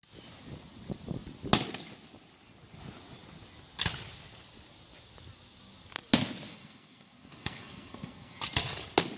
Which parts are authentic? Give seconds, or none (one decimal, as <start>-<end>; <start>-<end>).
0.0-6.5; 8.4-9.2